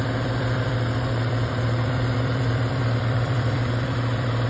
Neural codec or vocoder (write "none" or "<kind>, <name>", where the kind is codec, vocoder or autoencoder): vocoder, BigVGAN v2